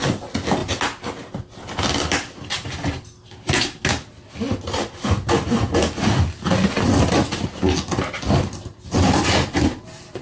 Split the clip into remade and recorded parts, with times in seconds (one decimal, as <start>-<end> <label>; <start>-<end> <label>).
0.0-10.2 recorded